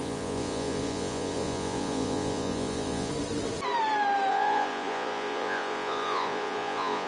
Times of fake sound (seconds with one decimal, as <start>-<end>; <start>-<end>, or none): 0.0-3.1; 4.3-7.1